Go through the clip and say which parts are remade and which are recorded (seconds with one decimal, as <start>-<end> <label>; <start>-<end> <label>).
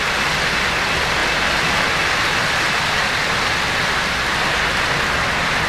0.0-5.7 recorded